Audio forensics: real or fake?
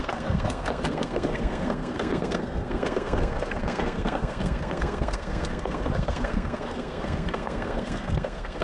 fake